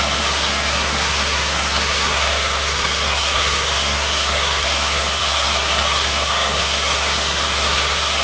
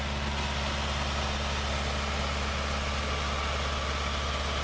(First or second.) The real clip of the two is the second